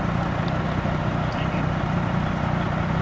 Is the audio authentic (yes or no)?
yes